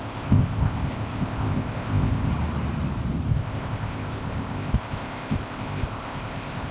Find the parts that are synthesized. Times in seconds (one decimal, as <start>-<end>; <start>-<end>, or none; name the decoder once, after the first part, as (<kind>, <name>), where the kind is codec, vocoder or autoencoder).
0.0-2.3 (codec, ZipCodec); 3.3-6.7